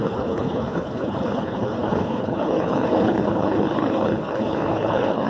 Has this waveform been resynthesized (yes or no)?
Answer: yes